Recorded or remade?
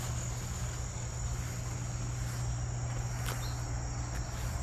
recorded